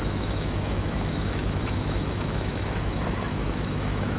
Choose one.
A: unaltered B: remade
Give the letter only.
B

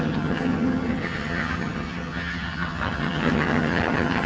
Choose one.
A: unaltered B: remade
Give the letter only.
B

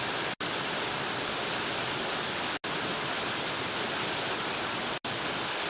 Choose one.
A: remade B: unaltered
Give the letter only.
B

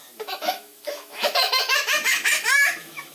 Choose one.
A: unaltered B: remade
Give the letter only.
B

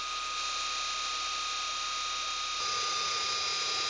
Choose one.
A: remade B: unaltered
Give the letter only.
B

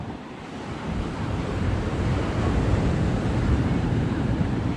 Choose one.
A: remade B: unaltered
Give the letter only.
A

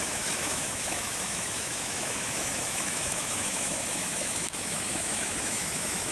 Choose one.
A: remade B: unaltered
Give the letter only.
A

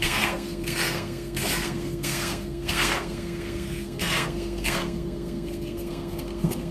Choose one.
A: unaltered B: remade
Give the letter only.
B